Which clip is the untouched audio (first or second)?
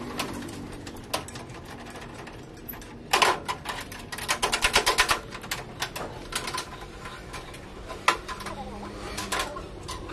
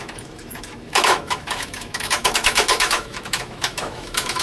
first